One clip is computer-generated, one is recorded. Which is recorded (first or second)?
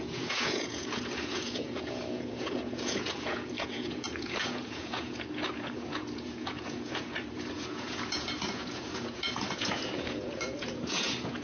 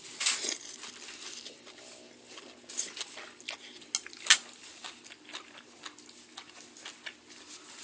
second